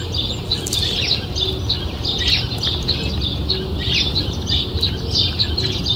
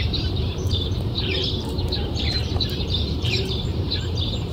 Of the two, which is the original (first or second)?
first